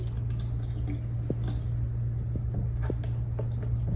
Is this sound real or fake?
real